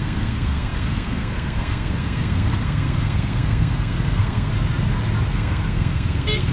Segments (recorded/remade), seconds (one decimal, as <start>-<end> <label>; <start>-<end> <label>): 0.0-4.5 remade; 4.5-5.3 recorded; 5.3-6.5 remade